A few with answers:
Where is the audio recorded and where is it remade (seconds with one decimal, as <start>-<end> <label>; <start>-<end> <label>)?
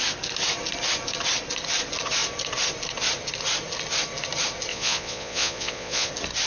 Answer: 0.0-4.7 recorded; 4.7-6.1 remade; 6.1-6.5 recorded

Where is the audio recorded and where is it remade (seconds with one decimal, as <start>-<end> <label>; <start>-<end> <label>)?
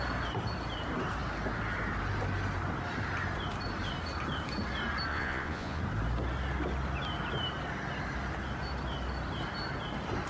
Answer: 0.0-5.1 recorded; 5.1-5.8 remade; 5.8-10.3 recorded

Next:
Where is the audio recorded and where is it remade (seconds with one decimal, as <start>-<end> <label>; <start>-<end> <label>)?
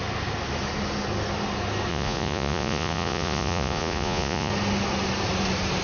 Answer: 0.0-1.9 recorded; 1.9-4.5 remade; 4.5-5.8 recorded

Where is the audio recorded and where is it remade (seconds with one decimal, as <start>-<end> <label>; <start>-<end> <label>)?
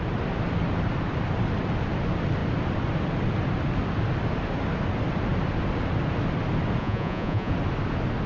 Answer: 0.0-6.8 recorded; 6.8-7.5 remade; 7.5-8.3 recorded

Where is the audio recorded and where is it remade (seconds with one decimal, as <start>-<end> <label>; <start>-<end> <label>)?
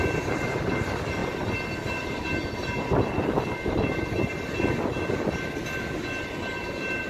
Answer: 0.0-7.1 recorded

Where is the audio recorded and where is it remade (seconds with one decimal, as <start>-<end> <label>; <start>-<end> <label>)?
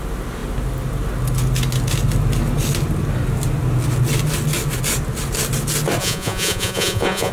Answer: 0.0-6.0 recorded; 6.0-7.3 remade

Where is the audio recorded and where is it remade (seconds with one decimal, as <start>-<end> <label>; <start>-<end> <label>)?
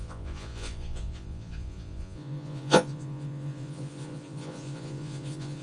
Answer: 0.0-5.6 remade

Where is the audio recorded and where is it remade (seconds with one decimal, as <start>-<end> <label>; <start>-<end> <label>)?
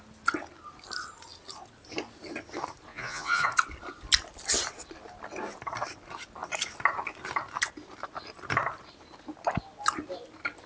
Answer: 0.0-2.9 recorded; 2.9-3.5 remade; 3.5-10.7 recorded